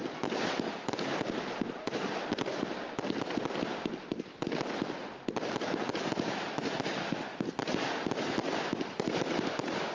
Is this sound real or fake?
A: real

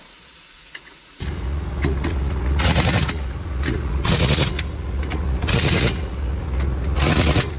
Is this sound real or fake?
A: fake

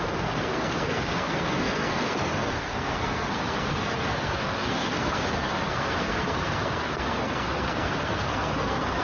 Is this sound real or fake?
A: fake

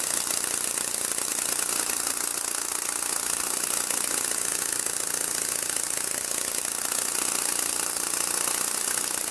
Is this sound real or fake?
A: real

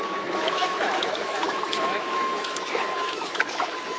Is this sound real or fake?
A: fake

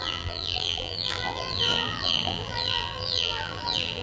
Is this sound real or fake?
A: fake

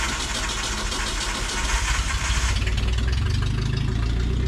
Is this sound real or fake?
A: real